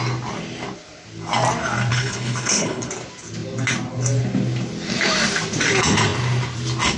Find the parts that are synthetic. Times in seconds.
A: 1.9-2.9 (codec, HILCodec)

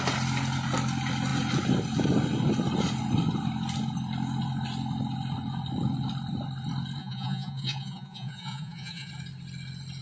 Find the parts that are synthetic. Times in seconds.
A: 7.0-9.1 (vocoder, Vocos)

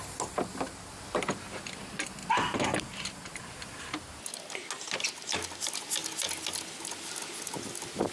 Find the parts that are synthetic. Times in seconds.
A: 2.2-3.8 (vocoder, BigVGAN v2)

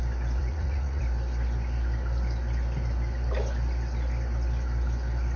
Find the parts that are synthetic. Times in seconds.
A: 0.4-1.0 (vocoder, Vocos)

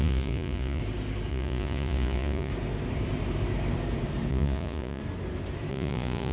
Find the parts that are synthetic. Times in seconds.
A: 0.0-0.8 (vocoder, Vocos); 1.3-2.5; 4.3-5.0; 5.7-6.3